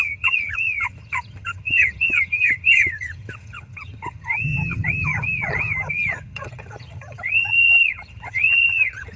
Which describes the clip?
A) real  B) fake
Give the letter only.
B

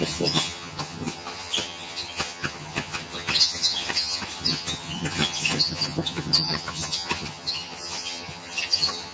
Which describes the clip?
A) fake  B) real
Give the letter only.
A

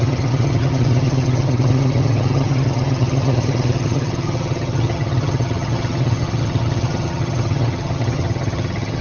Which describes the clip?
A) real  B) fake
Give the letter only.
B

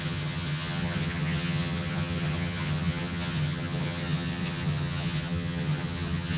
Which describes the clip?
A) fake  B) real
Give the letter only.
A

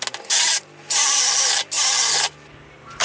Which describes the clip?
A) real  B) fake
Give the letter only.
A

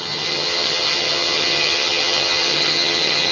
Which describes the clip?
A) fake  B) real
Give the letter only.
A